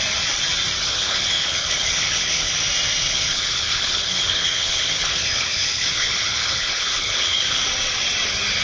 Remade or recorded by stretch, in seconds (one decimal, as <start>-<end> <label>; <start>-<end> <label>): 0.0-0.8 recorded; 0.8-2.5 remade; 2.5-3.0 recorded; 3.0-7.6 remade; 7.6-8.6 recorded